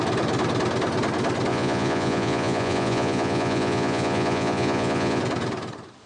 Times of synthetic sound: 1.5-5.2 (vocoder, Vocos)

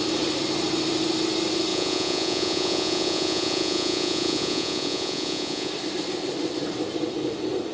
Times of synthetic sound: 1.7-5.7 (vocoder, Vocos)

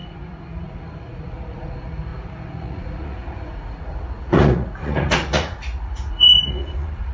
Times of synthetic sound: 0.0-7.1 (vocoder, Vocos)

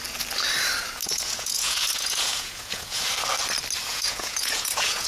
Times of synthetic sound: 1.0-3.0 (vocoder, Vocos); 3.9-5.1

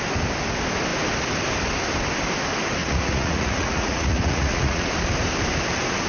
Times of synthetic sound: 2.8-4.9 (vocoder, Vocos)